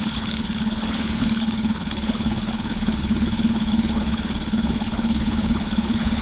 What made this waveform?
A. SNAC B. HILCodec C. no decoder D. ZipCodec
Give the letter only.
B